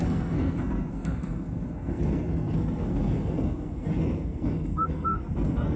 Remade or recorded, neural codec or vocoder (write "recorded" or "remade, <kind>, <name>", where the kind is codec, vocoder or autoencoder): remade, codec, SNAC